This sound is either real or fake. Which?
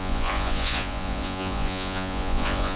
fake